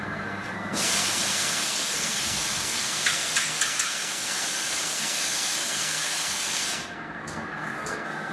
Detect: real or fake fake